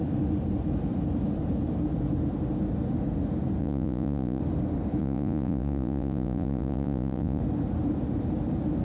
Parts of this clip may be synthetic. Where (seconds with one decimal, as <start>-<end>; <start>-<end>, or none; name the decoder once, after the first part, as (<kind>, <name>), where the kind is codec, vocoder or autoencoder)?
3.6-4.4 (vocoder, Vocos); 5.0-7.4